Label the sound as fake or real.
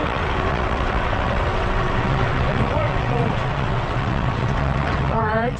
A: fake